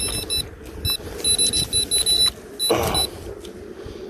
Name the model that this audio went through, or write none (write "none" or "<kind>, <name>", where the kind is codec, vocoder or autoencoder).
none